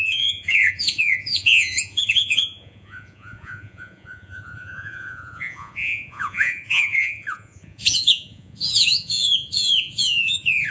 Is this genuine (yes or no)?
no